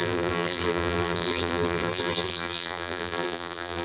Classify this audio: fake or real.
fake